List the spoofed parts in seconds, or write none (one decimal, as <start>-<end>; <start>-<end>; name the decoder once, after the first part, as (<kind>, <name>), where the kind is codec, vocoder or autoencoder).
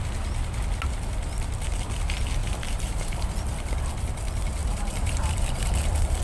2.4-3.3 (vocoder, BigVGAN v2); 4.6-6.2